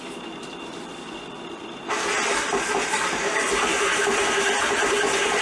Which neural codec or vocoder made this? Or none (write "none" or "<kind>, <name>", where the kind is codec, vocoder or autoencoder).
vocoder, BigVGAN v2